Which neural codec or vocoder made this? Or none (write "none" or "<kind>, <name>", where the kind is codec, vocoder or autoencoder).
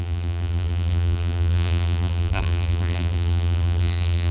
vocoder, BigVGAN v2